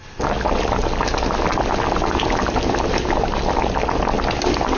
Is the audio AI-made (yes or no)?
no